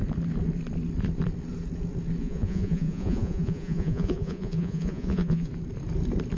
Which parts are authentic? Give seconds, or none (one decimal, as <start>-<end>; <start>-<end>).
0.0-2.2; 5.5-6.4